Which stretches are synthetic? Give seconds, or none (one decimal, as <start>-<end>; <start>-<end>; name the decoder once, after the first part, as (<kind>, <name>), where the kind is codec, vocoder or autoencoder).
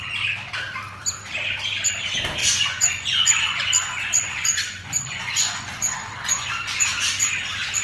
2.4-6.8 (vocoder, Vocos)